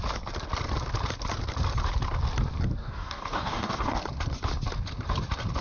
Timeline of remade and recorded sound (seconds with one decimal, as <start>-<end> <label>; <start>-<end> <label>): 0.0-2.8 recorded; 2.8-4.0 remade; 4.0-5.6 recorded